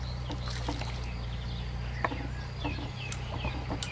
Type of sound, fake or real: real